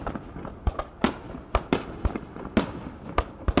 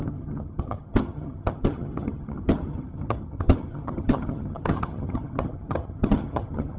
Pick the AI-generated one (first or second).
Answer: second